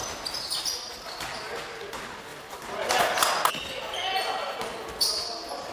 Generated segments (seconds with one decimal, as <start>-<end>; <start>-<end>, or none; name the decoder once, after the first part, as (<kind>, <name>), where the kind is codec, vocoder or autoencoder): 2.3-3.0 (vocoder, BigVGAN v2)

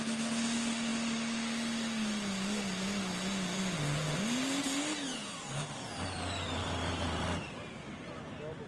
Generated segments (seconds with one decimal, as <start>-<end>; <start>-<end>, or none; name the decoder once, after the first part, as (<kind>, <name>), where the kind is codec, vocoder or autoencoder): 6.6-7.5 (vocoder, BigVGAN v2)

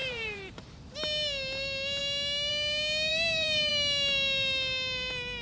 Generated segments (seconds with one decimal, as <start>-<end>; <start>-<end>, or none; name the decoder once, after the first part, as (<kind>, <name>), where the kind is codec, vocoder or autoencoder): 0.0-0.6 (vocoder, BigVGAN v2); 3.1-3.7

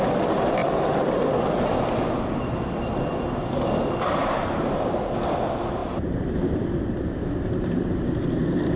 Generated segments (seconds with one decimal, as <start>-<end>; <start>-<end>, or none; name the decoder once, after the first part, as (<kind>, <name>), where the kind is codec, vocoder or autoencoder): 4.2-5.0 (vocoder, BigVGAN v2); 5.8-6.8

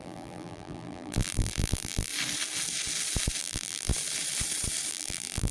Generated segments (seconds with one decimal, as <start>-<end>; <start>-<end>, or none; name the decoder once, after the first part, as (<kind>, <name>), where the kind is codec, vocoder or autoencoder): 0.0-2.1 (vocoder, BigVGAN v2); 3.4-3.9; 4.9-5.5

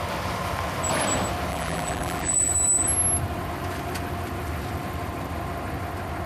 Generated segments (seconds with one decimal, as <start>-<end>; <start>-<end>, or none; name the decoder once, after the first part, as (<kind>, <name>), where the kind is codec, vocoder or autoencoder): 1.5-2.5 (vocoder, BigVGAN v2)